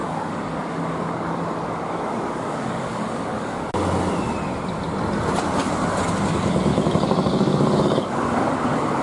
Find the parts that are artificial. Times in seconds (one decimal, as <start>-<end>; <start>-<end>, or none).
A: 0.0-3.7; 6.7-9.0